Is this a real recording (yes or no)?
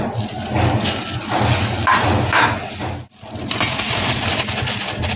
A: yes